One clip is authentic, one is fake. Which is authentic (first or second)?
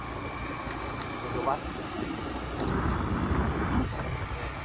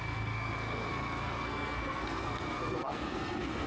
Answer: first